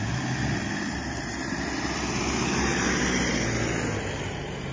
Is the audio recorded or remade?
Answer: recorded